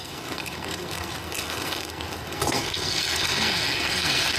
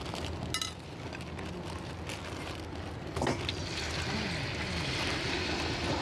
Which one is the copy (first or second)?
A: first